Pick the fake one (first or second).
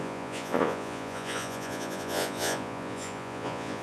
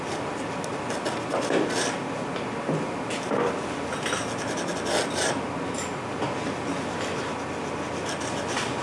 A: first